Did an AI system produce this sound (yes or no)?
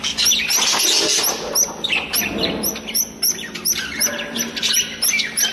no